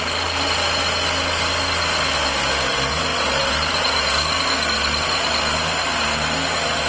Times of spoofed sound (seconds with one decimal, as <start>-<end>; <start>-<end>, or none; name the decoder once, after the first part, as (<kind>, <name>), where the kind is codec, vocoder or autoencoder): none